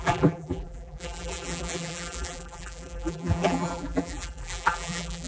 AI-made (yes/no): yes